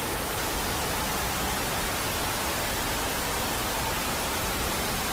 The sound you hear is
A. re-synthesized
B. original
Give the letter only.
B